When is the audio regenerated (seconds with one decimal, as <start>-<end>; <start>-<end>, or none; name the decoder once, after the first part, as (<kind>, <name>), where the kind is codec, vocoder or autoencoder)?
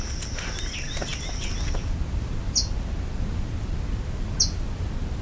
none